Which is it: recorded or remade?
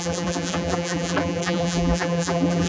remade